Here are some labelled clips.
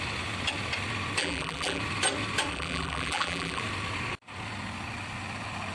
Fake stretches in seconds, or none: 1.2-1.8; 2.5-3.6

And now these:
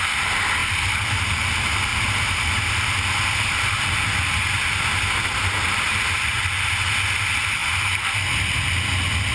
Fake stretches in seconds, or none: 1.9-6.4

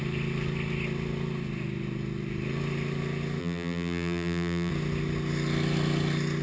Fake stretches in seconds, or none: 3.4-4.7

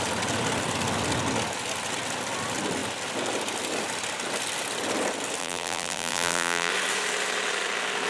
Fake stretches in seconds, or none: 5.4-6.7

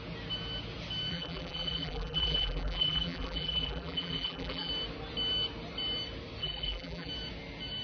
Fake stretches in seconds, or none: 1.1-4.7; 6.4-7.1

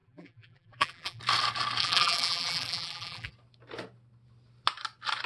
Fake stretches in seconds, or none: 0.0-1.2; 1.8-3.3

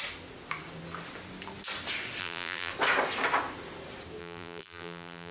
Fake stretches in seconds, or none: 2.2-2.7; 4.2-5.3

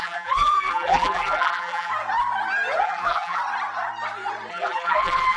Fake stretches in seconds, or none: 0.0-1.9; 2.8-3.4; 4.5-5.4